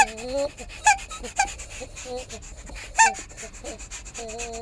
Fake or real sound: real